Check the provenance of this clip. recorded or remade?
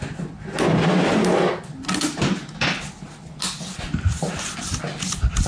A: recorded